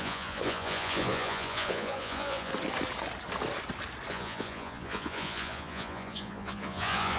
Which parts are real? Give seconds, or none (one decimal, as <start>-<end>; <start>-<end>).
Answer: 2.5-4.1